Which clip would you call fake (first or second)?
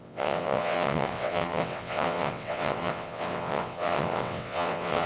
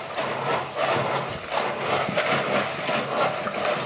first